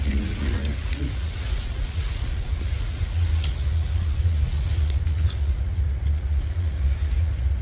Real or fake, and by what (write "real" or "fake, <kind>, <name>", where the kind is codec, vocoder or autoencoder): fake, vocoder, Vocos